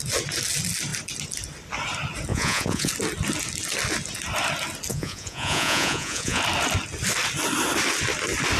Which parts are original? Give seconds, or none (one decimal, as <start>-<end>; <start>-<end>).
0.0-2.3; 2.9-4.9; 6.4-8.6